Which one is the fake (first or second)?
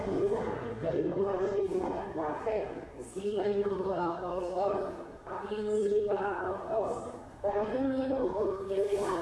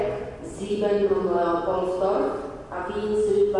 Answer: first